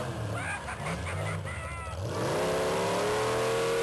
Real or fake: real